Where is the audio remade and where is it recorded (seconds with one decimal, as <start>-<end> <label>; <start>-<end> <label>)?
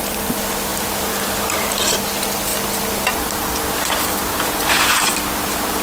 0.0-5.8 recorded